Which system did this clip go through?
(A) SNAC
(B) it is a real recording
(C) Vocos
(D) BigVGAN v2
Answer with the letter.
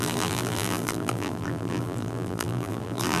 D